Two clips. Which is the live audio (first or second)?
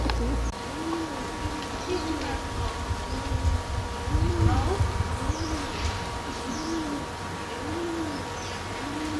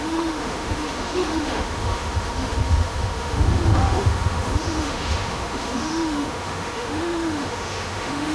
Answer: first